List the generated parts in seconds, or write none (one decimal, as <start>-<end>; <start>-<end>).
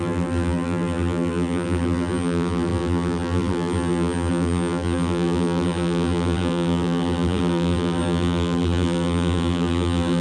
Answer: 0.0-10.2